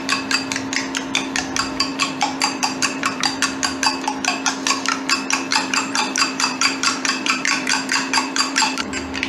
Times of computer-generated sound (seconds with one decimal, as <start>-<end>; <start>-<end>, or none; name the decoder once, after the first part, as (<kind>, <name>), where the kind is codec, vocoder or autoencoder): 1.9-3.4 (vocoder, BigVGAN v2); 5.5-8.9